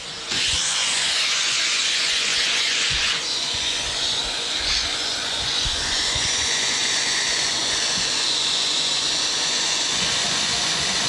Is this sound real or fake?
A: fake